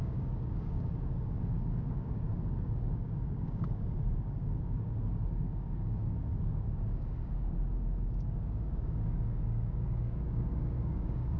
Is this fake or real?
fake